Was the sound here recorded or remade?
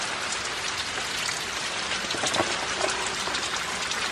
recorded